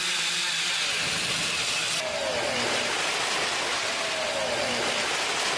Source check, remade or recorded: recorded